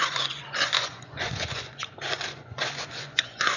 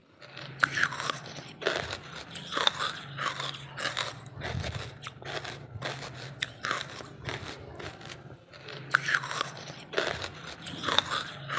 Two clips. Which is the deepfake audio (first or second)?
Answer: first